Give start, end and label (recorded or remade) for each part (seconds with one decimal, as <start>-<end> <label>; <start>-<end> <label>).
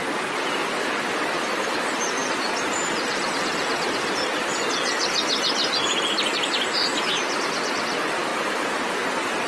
0.0-4.5 remade; 4.5-7.0 recorded; 7.0-8.3 remade; 8.3-9.5 recorded